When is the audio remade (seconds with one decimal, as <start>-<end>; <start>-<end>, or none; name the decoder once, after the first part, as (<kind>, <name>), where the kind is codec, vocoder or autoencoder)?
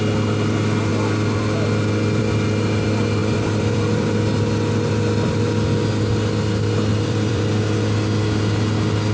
3.2-5.3 (vocoder, BigVGAN v2); 6.9-7.6